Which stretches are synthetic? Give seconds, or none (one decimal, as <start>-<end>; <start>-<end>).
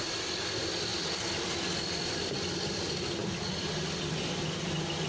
none